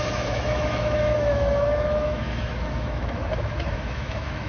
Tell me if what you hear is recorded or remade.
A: remade